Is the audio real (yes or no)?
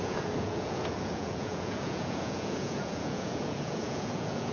no